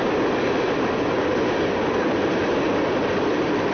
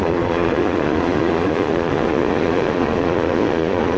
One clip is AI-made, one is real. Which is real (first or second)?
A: first